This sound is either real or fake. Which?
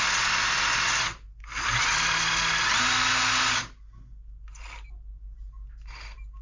real